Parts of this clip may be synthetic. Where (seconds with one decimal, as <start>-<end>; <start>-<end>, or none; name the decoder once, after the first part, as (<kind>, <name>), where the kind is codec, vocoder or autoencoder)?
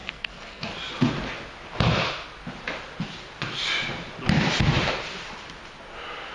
0.0-0.7 (codec, SNAC)